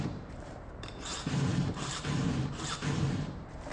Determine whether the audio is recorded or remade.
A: remade